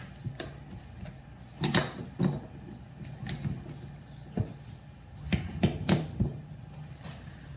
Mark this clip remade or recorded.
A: recorded